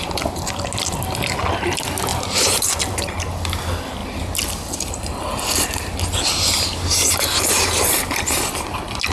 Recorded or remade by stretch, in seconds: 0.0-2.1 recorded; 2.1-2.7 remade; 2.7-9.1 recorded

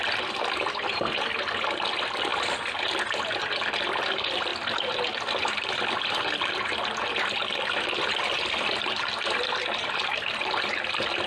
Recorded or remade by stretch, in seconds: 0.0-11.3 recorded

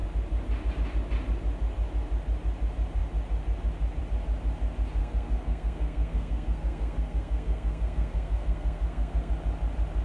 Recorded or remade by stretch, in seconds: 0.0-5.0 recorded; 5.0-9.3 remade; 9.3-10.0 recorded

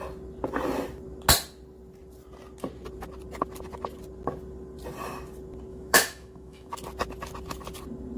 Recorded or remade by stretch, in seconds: 0.0-5.7 recorded; 5.7-6.7 remade; 6.7-8.2 recorded

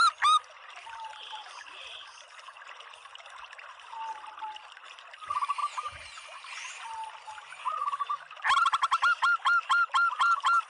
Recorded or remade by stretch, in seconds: 0.0-10.7 recorded

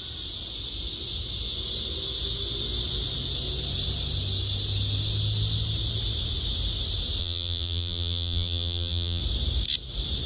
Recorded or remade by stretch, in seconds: 0.0-7.2 recorded; 7.2-9.2 remade; 9.2-10.3 recorded

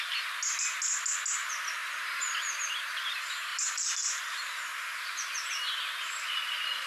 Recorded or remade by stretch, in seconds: 0.0-3.5 recorded; 3.5-5.8 remade; 5.8-6.9 recorded

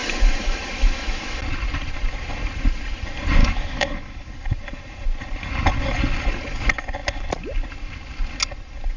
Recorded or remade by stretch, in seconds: 0.0-1.4 remade; 1.4-3.4 recorded; 3.4-4.3 remade; 4.3-9.0 recorded